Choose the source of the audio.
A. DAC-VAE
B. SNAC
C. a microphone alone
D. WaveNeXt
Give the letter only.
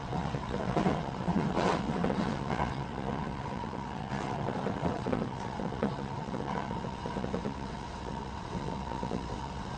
D